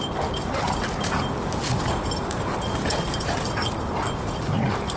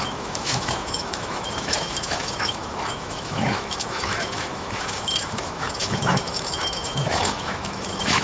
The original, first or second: first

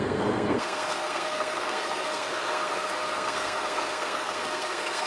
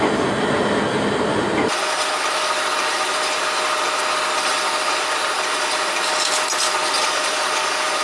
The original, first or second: second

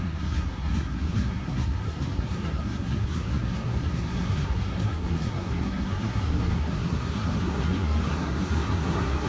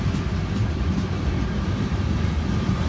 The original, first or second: second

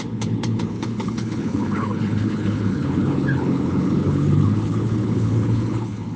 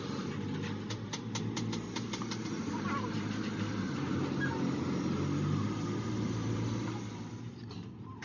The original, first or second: second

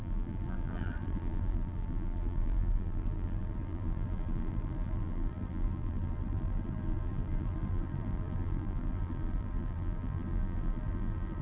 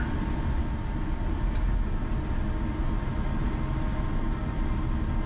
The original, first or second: second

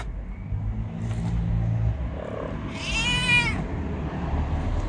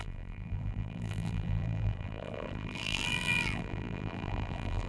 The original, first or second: first